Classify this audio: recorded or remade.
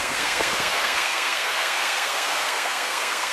remade